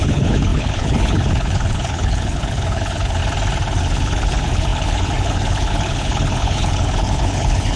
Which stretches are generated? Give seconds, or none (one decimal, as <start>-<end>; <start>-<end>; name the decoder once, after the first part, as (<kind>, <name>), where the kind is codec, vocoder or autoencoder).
0.0-3.2 (codec, HILCodec); 3.8-7.8